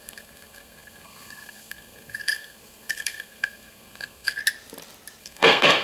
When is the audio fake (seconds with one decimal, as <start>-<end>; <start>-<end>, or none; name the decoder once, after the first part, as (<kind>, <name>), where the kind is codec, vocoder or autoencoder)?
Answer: 0.0-4.4 (codec, SNAC); 5.2-5.8